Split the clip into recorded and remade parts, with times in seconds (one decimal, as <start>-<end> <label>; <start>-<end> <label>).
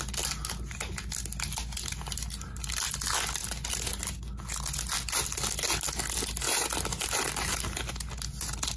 0.0-8.8 recorded